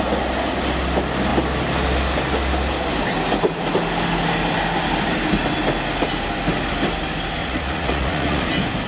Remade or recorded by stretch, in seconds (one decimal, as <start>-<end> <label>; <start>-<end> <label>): 0.0-7.4 recorded; 7.4-8.5 remade; 8.5-8.9 recorded